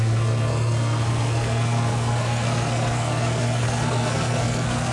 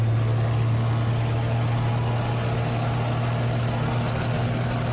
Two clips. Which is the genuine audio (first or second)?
second